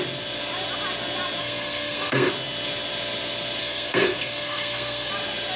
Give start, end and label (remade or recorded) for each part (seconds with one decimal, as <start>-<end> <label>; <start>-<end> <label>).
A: 0.0-1.4 recorded; 1.4-2.3 remade; 2.3-3.6 recorded; 3.6-5.1 remade; 5.1-5.6 recorded